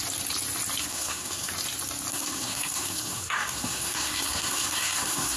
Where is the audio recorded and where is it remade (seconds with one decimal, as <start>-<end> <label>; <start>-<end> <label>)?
0.0-0.8 recorded; 0.8-1.5 remade; 1.5-2.1 recorded; 2.1-5.4 remade